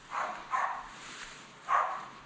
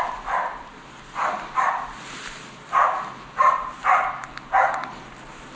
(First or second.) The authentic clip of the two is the second